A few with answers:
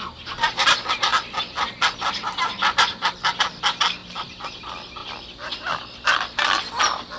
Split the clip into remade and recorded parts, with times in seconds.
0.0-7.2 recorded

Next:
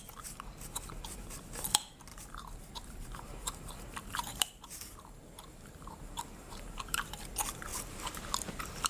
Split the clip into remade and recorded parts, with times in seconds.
0.0-2.1 recorded; 2.1-7.3 remade; 7.3-7.7 recorded; 7.7-8.2 remade; 8.2-8.9 recorded

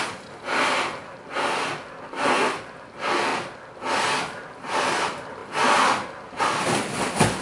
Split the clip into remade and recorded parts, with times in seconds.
0.0-1.0 recorded; 1.0-2.6 remade; 2.6-7.4 recorded

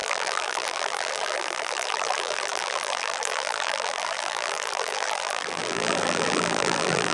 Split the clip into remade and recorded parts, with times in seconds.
0.0-7.1 remade

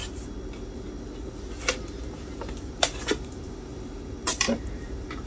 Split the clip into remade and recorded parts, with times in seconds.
0.0-1.8 recorded; 1.8-3.7 remade; 3.7-4.3 recorded; 4.3-5.3 remade